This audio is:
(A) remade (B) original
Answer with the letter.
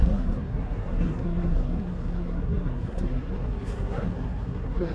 A